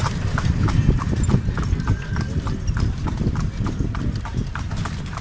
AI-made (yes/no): no